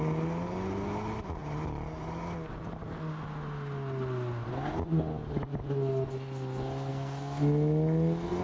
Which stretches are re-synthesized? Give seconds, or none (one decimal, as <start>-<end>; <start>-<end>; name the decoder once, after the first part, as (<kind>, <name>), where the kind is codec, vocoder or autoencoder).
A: 6.9-7.4 (codec, SNAC)